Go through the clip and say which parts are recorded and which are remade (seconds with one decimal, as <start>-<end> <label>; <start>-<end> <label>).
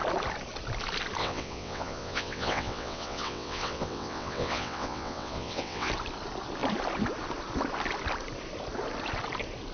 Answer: 0.0-1.2 recorded; 1.2-5.9 remade; 5.9-9.7 recorded